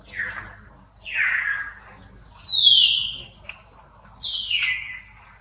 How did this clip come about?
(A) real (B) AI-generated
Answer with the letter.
A